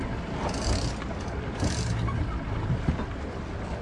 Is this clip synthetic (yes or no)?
no